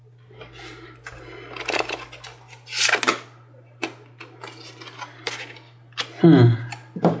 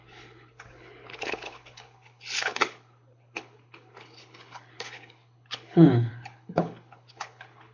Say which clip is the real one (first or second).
first